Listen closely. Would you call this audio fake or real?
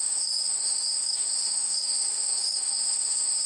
fake